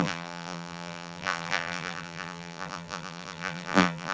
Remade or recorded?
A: remade